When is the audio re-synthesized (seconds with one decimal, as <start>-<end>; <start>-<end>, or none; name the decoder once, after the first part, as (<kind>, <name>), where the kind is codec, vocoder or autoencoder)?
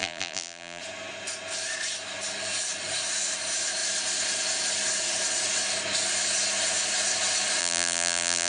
0.0-0.8 (vocoder, BigVGAN v2); 7.6-8.5